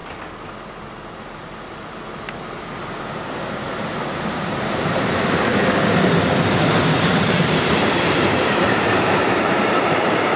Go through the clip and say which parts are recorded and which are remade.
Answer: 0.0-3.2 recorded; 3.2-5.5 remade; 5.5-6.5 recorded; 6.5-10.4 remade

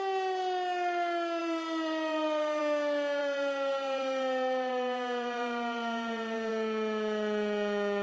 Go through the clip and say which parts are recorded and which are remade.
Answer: 0.0-1.4 recorded; 1.4-2.6 remade; 2.6-3.2 recorded; 3.2-6.5 remade; 6.5-8.0 recorded